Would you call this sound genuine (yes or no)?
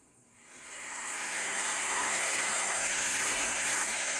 no